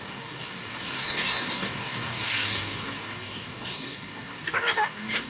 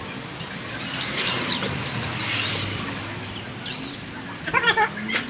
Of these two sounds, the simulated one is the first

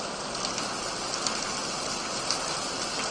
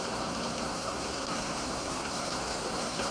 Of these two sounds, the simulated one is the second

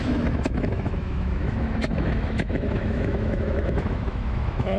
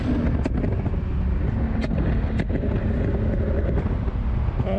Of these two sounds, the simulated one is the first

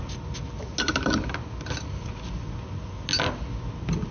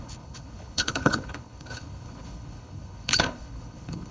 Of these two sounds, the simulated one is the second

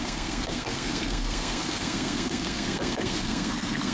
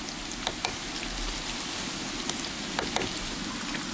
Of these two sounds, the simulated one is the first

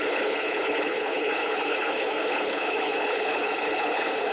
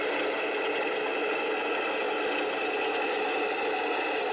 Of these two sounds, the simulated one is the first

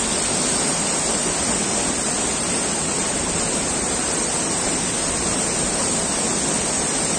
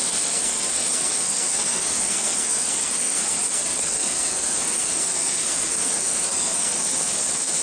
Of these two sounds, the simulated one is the second